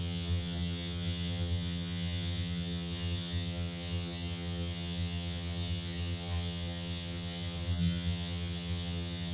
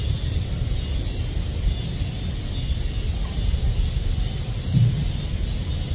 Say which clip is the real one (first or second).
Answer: second